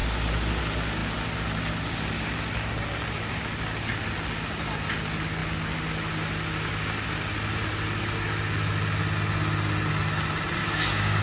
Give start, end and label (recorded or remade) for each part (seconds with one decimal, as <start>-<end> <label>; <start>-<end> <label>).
0.0-10.6 recorded; 10.6-11.2 remade